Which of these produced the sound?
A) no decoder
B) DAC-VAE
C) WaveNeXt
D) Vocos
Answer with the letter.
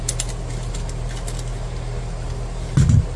A